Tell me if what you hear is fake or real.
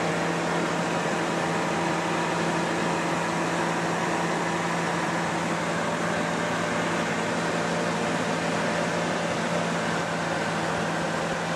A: real